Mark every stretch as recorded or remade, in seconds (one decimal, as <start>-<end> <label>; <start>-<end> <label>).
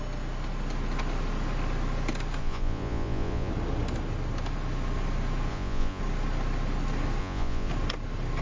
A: 0.0-2.4 recorded; 2.4-3.5 remade; 3.5-5.5 recorded; 5.5-6.0 remade; 6.0-7.2 recorded; 7.2-7.7 remade; 7.7-8.4 recorded